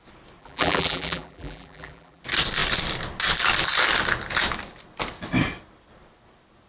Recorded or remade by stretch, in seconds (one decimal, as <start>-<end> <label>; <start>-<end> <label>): 0.0-0.4 recorded; 0.4-2.2 remade; 2.2-6.7 recorded